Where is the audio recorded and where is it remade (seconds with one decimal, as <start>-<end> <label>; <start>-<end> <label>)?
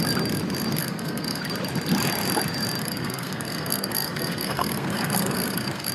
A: 0.0-0.8 recorded; 0.8-1.4 remade; 1.4-2.8 recorded; 2.8-5.9 remade